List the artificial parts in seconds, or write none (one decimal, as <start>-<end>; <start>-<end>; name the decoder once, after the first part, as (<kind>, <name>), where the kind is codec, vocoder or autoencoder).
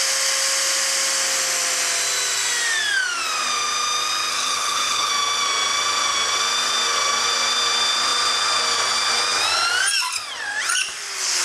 4.3-5.1 (codec, HILCodec)